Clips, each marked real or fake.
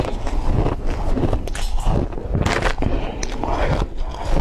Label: real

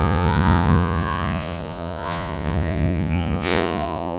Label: fake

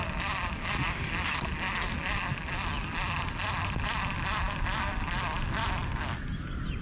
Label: real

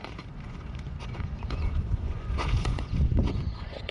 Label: fake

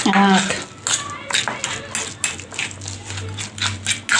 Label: real